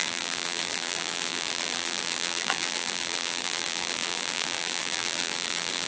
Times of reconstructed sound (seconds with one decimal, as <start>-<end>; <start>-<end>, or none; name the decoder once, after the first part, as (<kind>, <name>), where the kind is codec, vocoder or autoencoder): 0.0-5.9 (vocoder, BigVGAN v2)